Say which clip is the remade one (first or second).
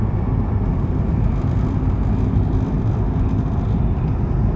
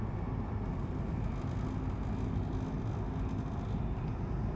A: first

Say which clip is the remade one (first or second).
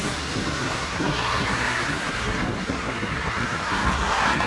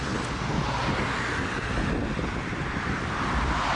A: first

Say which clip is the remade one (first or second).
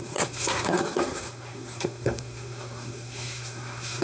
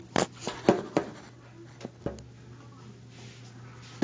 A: first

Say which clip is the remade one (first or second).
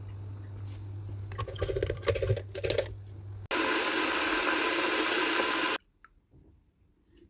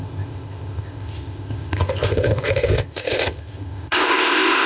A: second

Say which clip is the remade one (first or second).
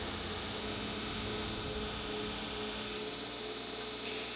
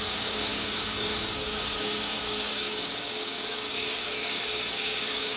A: second